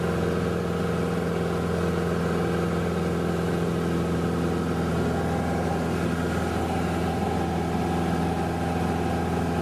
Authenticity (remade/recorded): recorded